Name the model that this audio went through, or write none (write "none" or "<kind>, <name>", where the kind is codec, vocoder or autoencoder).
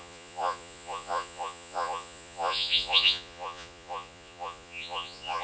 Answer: vocoder, Vocos